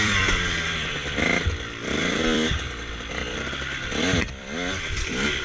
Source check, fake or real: fake